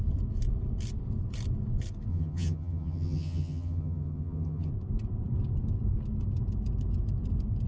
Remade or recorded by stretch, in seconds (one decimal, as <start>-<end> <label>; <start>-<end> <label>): 0.0-2.1 recorded; 2.1-4.7 remade; 4.7-7.7 recorded